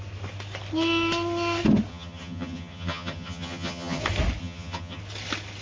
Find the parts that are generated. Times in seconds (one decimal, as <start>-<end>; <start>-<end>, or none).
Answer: 1.9-4.0; 4.4-5.0